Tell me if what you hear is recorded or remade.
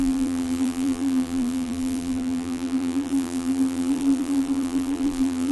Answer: remade